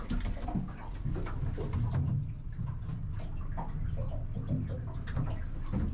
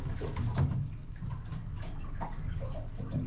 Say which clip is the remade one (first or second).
second